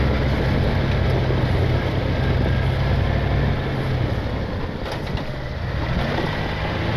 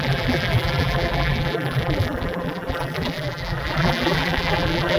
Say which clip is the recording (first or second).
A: first